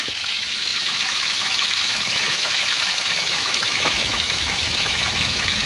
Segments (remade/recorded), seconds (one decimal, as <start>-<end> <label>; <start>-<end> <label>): 0.0-5.7 remade